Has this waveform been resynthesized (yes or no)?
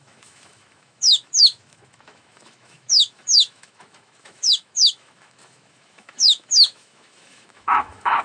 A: yes